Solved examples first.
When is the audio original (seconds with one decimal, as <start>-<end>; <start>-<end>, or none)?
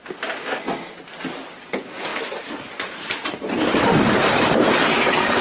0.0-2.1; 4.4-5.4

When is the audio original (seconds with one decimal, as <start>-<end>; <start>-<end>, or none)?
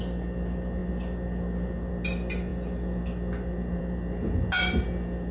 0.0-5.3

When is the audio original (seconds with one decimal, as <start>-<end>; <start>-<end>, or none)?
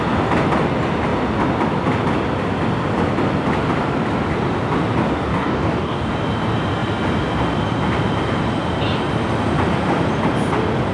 0.0-5.3; 6.1-10.9